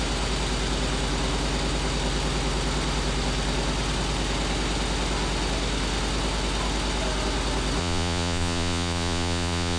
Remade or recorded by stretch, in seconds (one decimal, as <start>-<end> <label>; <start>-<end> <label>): 0.0-7.8 recorded; 7.8-9.8 remade